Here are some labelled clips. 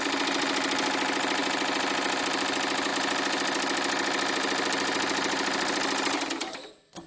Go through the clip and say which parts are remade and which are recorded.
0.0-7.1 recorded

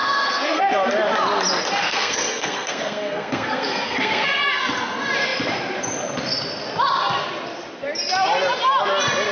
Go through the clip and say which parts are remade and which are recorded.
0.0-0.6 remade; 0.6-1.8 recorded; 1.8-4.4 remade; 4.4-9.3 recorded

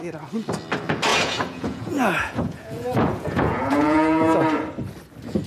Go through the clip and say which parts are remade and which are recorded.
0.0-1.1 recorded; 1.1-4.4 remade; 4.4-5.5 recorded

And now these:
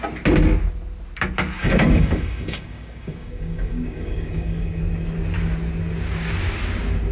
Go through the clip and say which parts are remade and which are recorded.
0.0-1.6 recorded; 1.6-4.8 remade; 4.8-7.1 recorded